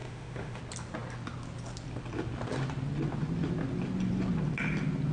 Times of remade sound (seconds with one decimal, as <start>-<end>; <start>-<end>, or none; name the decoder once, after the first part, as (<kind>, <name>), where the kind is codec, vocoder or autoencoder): 0.0-0.6 (autoencoder, DAC-VAE)